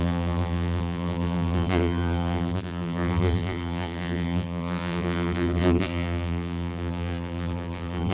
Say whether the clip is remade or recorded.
remade